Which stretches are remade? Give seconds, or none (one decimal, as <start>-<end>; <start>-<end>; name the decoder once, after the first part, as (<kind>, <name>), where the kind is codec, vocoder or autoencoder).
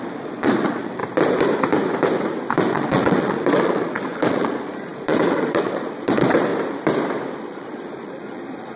0.0-1.0 (vocoder, Vocos); 2.7-6.5; 7.3-8.8